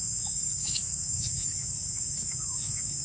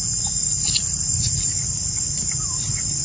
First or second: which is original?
second